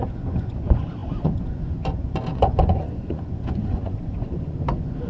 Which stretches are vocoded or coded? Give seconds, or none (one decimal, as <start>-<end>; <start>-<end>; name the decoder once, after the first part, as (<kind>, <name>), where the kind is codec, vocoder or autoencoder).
0.0-5.1 (vocoder, Vocos)